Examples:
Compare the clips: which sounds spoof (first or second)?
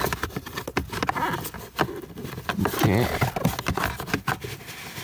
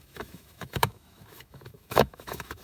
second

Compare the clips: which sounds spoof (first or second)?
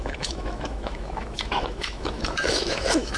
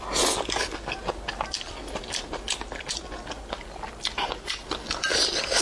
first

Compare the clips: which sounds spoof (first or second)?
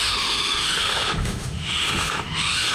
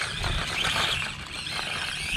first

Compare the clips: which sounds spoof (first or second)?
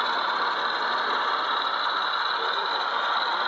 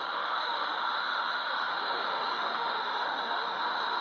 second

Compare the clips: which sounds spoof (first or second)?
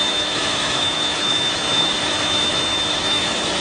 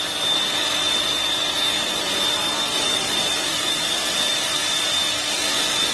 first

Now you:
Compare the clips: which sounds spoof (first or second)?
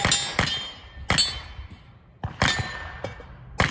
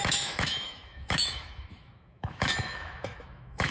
second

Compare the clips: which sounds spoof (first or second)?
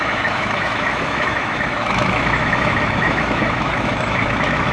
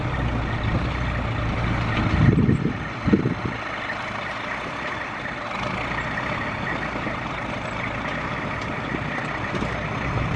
first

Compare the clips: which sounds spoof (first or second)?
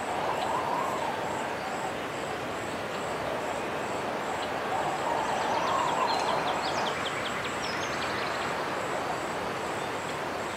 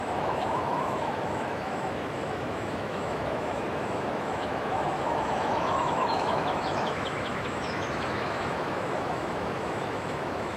second